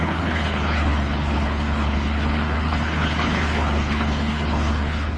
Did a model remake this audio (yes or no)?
yes